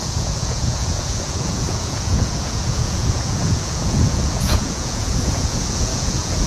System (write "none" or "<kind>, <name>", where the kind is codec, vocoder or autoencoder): vocoder, Vocos